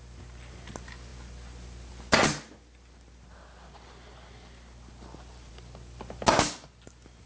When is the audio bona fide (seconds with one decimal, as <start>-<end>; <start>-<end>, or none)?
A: 0.0-7.3